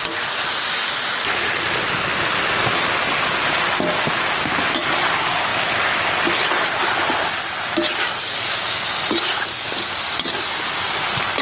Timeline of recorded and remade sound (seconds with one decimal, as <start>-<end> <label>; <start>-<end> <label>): 0.0-11.4 recorded